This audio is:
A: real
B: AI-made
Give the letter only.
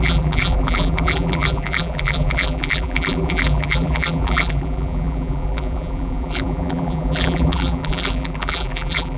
B